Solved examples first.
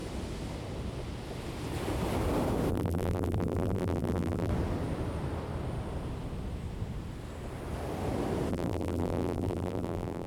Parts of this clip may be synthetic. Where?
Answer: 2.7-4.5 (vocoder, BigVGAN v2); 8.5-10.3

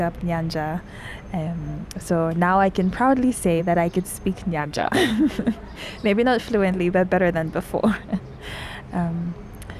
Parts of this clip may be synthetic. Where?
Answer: 4.6-5.1 (codec, SNAC)

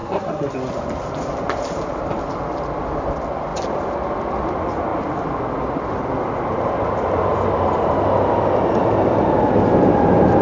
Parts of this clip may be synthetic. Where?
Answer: 0.0-0.5 (codec, SNAC)

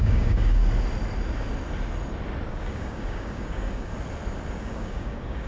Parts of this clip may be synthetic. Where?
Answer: 0.0-0.6 (codec, DAC); 2.5-3.9; 4.6-5.5

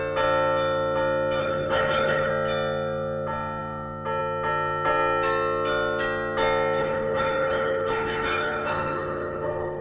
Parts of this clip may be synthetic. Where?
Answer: 1.4-2.3 (codec, HILCodec); 6.8-9.8